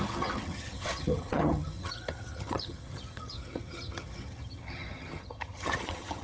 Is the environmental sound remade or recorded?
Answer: remade